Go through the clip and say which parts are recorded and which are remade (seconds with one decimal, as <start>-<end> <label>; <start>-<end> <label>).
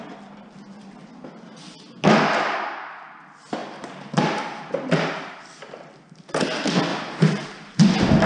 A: 0.0-3.6 recorded; 3.6-4.7 remade; 4.7-6.9 recorded; 6.9-7.8 remade; 7.8-8.3 recorded